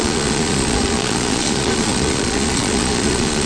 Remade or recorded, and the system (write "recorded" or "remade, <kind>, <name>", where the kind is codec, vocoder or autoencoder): remade, vocoder, Vocos